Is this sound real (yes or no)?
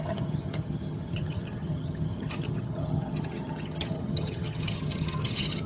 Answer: no